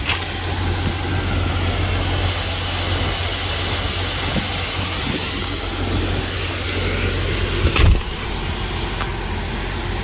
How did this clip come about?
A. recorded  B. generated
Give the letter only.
A